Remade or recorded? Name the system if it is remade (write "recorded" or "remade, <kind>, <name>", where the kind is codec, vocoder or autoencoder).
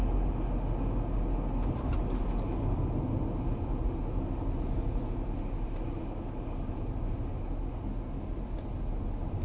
recorded